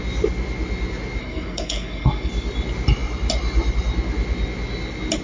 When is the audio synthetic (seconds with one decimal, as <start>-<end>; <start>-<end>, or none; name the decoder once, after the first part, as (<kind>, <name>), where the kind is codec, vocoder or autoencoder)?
1.2-2.3 (codec, SNAC)

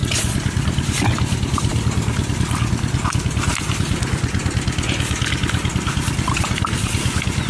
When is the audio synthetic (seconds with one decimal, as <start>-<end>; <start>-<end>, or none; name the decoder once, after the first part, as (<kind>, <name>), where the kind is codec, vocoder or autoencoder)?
none

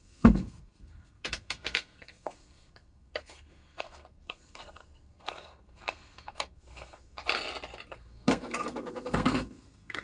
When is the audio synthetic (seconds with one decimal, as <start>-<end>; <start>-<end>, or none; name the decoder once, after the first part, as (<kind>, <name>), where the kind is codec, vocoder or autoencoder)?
0.0-7.2 (codec, SNAC); 7.9-10.0

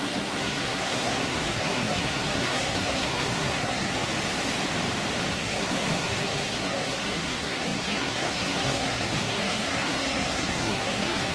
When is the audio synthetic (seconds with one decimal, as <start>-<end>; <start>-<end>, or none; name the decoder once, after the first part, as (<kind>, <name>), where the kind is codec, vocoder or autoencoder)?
0.0-4.1 (codec, SNAC); 5.3-11.3

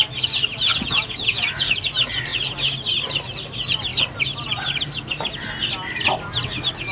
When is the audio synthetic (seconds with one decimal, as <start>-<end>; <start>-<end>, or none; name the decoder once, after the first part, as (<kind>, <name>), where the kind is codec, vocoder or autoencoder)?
0.7-1.7 (vocoder, Vocos)